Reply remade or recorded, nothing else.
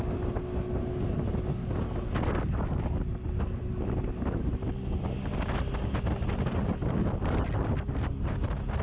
recorded